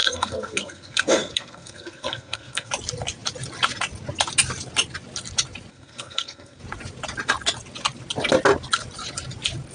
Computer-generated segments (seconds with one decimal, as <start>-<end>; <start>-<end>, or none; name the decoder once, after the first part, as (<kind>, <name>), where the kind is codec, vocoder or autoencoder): 0.0-2.7 (codec, SNAC); 5.7-6.6